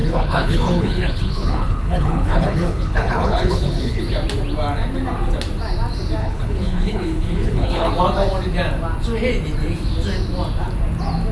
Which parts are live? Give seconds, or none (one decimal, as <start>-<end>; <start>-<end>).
4.0-6.2; 7.9-11.3